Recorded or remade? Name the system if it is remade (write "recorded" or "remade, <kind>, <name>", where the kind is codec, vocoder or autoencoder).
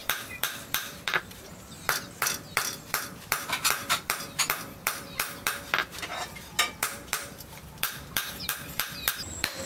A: remade, vocoder, BigVGAN v2